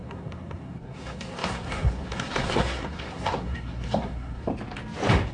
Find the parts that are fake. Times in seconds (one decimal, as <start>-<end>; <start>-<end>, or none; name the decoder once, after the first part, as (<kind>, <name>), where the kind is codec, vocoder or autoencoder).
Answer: 0.0-4.5 (codec, SNAC)